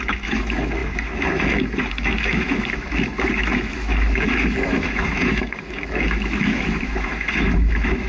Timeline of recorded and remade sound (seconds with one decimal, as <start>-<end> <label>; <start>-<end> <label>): 0.0-8.1 remade